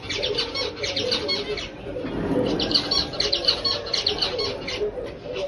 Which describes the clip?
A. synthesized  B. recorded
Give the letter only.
B